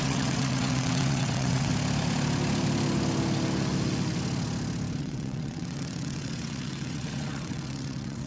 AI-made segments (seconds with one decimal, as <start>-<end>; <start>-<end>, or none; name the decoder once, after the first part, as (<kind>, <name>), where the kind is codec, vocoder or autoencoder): 0.0-1.7 (vocoder, WaveNeXt); 5.0-8.3